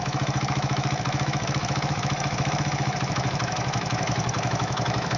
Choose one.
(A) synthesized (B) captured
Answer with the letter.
A